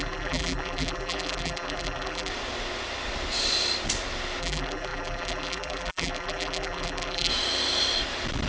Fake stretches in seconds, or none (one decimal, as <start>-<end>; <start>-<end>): 0.0-2.3; 4.4-7.3